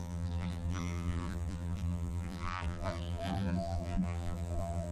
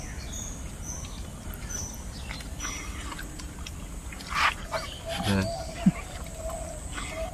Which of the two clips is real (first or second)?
second